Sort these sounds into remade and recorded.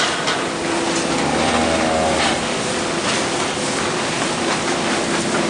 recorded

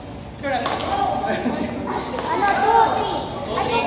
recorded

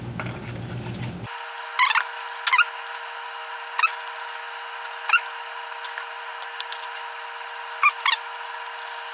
recorded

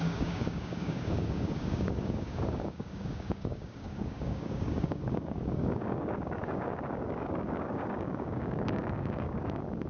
remade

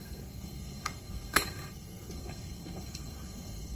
remade